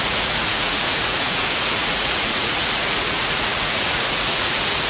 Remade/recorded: remade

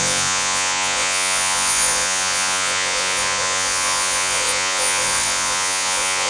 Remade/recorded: remade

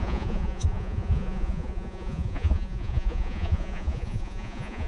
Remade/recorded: remade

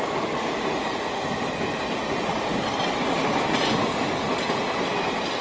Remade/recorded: recorded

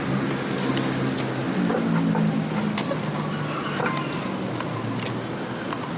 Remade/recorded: recorded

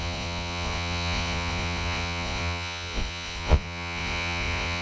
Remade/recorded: remade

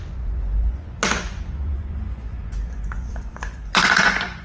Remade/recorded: remade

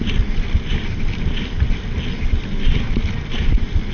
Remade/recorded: recorded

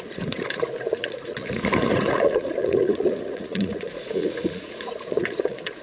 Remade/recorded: remade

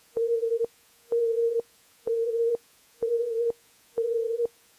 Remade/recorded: remade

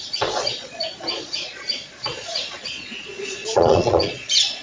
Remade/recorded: remade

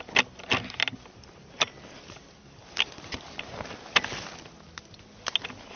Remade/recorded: recorded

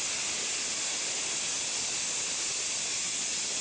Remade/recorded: recorded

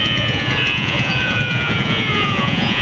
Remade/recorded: remade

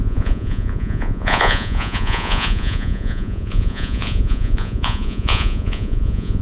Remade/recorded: remade